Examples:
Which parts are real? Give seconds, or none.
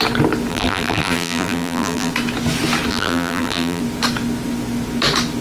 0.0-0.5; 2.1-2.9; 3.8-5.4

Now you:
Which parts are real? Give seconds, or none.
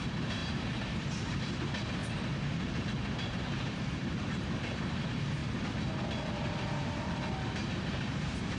2.0-2.9; 5.4-7.8